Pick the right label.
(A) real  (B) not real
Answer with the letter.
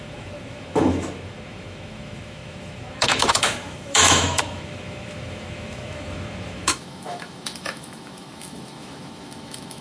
B